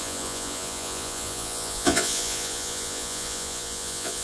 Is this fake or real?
fake